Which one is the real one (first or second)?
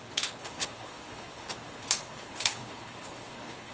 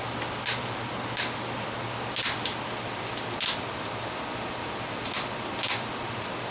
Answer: second